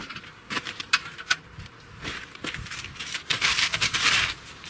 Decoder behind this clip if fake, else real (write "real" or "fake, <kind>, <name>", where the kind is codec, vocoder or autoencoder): fake, vocoder, BigVGAN v2